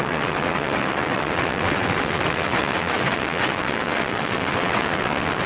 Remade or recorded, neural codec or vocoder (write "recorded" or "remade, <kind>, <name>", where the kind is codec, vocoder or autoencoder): remade, vocoder, WaveNeXt